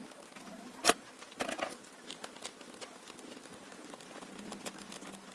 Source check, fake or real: real